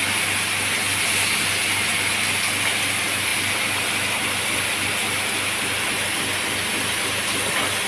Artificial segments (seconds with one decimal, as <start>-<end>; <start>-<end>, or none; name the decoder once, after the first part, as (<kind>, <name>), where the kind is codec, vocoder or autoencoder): none